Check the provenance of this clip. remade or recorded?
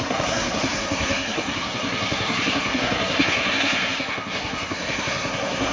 remade